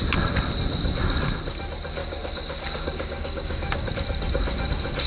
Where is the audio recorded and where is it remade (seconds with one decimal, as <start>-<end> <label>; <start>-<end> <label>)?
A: 0.0-2.0 recorded; 2.0-3.9 remade; 3.9-5.1 recorded